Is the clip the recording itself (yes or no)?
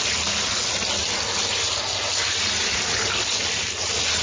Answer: yes